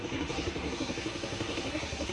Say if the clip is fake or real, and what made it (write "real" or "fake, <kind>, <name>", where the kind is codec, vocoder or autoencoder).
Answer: fake, codec, SNAC